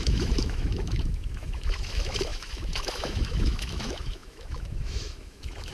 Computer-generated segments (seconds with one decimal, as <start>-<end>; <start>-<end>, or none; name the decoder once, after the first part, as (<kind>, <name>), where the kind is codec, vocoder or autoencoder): 0.0-5.7 (autoencoder, DAC-VAE)